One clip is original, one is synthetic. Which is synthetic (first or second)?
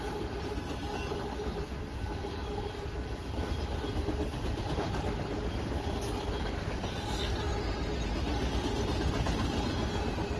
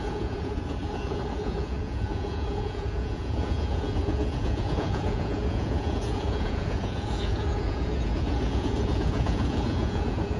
second